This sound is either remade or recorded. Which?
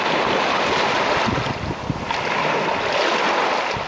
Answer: recorded